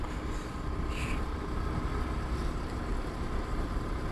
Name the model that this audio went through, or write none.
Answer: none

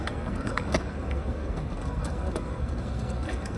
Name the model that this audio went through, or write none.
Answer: codec, SNAC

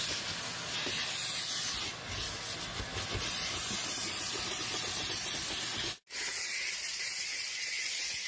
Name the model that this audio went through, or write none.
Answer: none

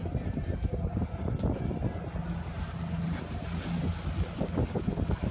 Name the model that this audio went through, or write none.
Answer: none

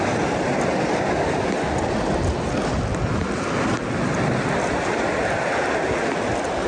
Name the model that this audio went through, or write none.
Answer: none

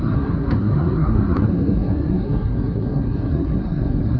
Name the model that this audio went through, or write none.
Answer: codec, SNAC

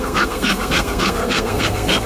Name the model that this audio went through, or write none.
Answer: codec, SNAC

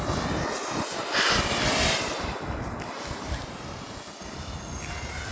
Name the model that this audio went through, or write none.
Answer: none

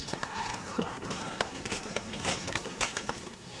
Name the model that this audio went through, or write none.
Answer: codec, SNAC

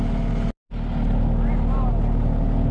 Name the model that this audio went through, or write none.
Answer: none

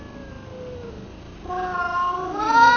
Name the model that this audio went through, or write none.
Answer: none